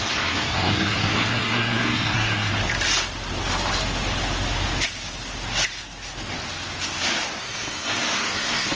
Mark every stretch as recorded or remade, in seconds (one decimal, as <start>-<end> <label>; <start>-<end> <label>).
0.0-2.5 remade; 2.5-7.4 recorded; 7.4-8.7 remade